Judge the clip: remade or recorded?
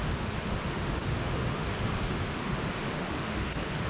remade